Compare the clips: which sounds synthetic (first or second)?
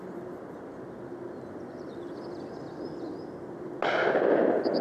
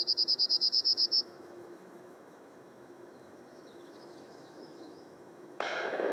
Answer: second